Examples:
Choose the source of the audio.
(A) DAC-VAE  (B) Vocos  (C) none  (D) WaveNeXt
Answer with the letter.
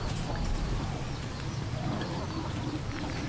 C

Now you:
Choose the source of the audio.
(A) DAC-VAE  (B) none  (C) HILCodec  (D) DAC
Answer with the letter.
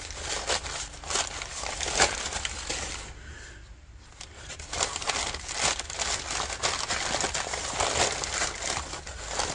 B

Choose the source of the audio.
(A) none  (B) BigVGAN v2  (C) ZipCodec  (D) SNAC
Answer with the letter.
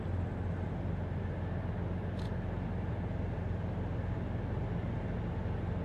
A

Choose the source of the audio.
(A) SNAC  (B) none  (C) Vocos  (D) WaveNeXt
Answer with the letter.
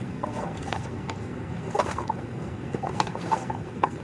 A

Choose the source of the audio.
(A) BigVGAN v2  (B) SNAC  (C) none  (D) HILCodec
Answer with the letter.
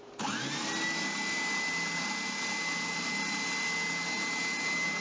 C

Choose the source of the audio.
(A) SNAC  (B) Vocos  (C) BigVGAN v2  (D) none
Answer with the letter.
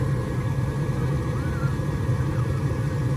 C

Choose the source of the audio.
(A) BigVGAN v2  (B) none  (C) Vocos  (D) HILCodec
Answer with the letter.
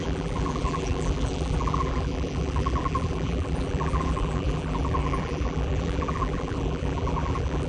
A